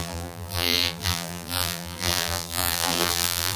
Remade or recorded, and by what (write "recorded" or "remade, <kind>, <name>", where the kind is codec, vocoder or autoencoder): remade, vocoder, BigVGAN v2